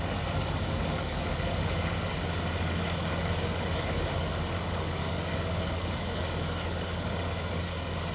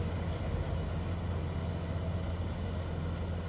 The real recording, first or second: second